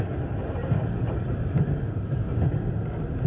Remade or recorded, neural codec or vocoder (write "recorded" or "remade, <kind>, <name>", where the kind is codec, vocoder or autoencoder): recorded